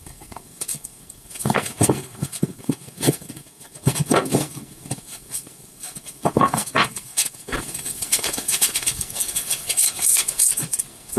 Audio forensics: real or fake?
fake